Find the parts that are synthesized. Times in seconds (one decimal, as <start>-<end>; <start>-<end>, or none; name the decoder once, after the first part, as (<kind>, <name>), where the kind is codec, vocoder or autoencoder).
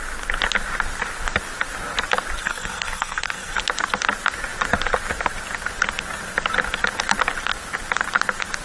2.4-3.6 (codec, SNAC)